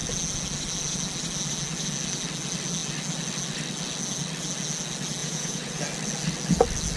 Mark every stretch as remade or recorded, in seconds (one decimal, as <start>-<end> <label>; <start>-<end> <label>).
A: 0.0-5.2 recorded; 5.2-5.8 remade; 5.8-7.0 recorded